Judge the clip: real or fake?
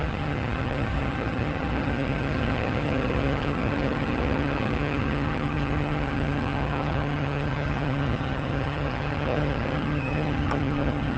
fake